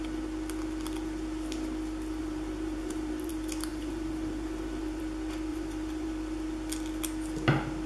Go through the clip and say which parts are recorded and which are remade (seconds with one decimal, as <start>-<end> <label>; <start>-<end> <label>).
0.0-2.2 recorded; 2.2-3.3 remade; 3.3-3.7 recorded; 3.7-5.0 remade; 5.0-5.5 recorded; 5.5-6.1 remade; 6.1-7.9 recorded